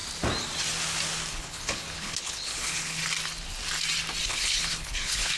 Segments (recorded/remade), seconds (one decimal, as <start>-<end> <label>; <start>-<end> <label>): 0.0-1.3 recorded; 1.3-3.0 remade; 3.0-4.2 recorded; 4.2-5.4 remade